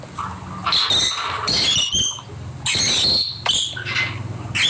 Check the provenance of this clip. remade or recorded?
recorded